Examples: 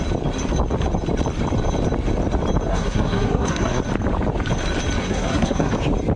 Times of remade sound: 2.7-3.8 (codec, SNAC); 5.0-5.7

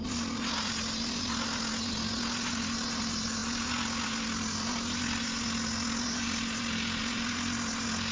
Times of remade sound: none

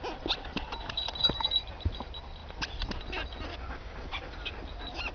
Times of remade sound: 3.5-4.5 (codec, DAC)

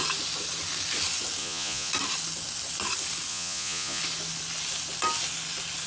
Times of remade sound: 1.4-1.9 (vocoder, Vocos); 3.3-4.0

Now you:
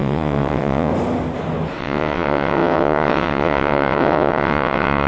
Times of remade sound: 0.0-0.9 (vocoder, WaveNeXt); 1.8-5.1

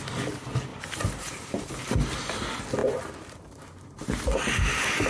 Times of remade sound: 0.7-1.7 (vocoder, BigVGAN v2); 2.8-4.2